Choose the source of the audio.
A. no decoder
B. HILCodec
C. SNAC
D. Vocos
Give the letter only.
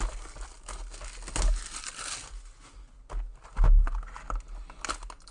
A